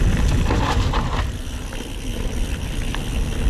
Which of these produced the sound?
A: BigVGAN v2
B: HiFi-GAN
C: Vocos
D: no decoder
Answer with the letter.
D